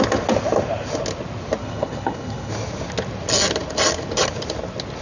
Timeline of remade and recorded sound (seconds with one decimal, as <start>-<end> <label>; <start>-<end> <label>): 0.0-1.6 recorded; 1.6-2.5 remade; 2.5-5.0 recorded